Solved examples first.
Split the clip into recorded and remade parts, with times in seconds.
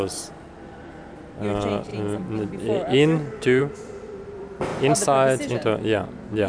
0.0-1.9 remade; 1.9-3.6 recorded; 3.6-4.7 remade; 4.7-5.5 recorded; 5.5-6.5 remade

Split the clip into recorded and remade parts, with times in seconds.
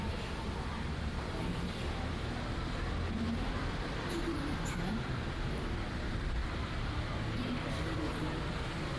0.0-6.4 recorded; 6.4-6.9 remade; 6.9-9.0 recorded